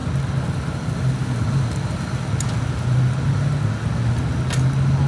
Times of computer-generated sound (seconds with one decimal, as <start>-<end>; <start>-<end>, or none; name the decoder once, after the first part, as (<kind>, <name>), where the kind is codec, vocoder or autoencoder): none